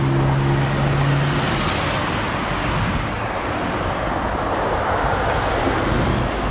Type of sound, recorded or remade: recorded